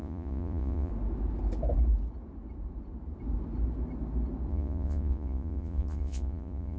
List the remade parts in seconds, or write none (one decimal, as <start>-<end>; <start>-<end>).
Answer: 0.0-0.9; 4.5-6.8